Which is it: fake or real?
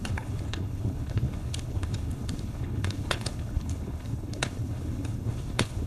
fake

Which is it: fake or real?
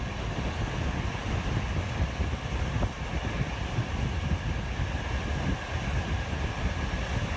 real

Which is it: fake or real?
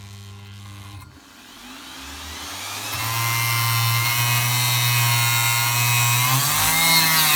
real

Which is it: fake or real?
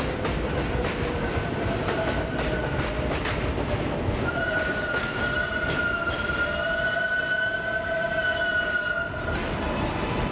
real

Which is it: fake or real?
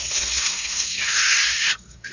fake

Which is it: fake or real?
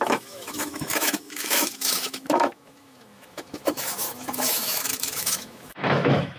fake